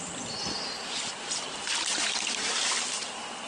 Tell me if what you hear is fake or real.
fake